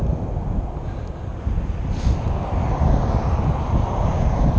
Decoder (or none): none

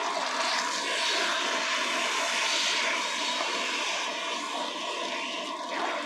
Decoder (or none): none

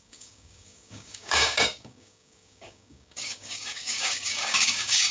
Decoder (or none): codec, DAC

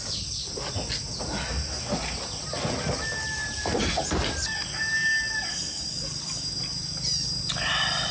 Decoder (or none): none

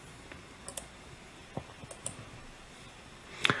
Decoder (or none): none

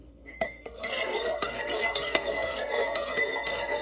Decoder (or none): codec, SNAC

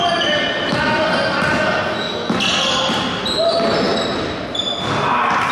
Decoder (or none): none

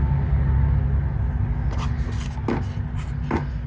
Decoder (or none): none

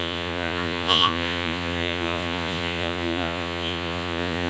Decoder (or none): vocoder, Vocos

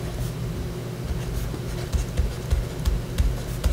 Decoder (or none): none